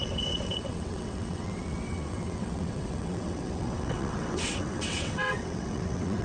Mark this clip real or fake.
fake